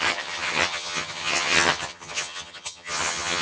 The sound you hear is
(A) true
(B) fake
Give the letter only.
B